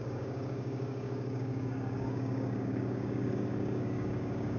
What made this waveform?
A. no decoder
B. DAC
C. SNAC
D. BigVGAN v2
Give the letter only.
B